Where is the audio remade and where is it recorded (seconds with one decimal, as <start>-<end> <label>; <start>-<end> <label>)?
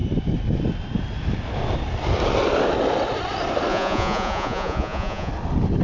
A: 0.0-3.7 recorded; 3.7-5.3 remade; 5.3-5.8 recorded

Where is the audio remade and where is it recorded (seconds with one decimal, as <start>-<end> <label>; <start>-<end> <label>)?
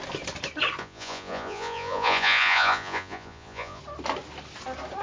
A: 0.0-0.8 recorded; 0.8-3.8 remade; 3.8-5.0 recorded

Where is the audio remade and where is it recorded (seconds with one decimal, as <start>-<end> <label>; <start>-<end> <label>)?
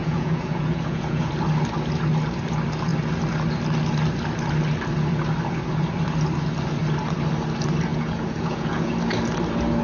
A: 0.0-1.3 remade; 1.3-7.9 recorded; 7.9-8.9 remade; 8.9-9.8 recorded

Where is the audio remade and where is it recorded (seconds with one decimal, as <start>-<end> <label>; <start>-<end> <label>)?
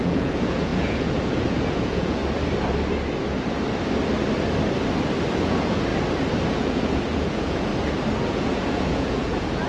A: 0.0-2.2 remade; 2.2-5.3 recorded; 5.3-5.9 remade; 5.9-6.6 recorded; 6.6-7.7 remade; 7.7-8.3 recorded; 8.3-9.7 remade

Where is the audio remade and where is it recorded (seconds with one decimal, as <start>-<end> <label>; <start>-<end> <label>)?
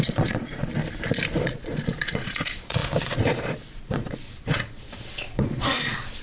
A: 0.0-0.7 remade; 0.7-1.4 recorded; 1.4-6.2 remade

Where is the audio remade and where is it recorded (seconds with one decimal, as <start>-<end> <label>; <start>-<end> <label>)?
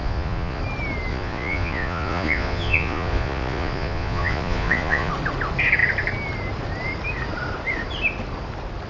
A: 0.0-0.6 remade; 0.6-1.1 recorded; 1.1-5.1 remade; 5.1-8.9 recorded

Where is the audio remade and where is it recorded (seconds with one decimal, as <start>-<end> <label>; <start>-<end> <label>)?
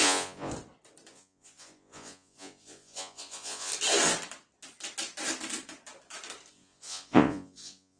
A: 0.0-0.5 remade; 0.5-1.1 recorded; 1.1-3.7 remade; 3.7-6.5 recorded; 6.5-8.0 remade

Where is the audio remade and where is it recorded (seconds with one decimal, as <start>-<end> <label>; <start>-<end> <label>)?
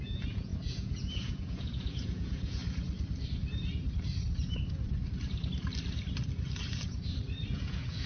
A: 0.0-2.6 remade; 2.6-7.5 recorded; 7.5-8.1 remade